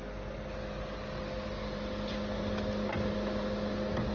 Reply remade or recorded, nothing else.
recorded